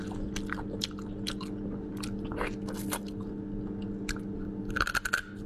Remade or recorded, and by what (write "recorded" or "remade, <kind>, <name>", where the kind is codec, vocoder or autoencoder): recorded